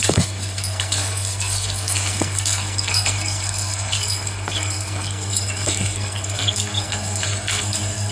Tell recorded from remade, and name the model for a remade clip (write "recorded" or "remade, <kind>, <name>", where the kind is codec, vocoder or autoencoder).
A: remade, codec, SNAC